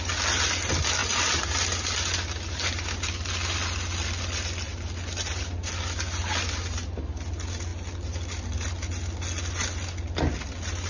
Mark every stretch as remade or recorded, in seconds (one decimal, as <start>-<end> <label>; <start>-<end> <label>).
0.0-10.9 recorded